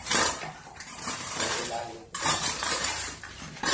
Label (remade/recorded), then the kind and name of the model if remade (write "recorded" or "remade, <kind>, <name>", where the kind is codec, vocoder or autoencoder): remade, vocoder, BigVGAN v2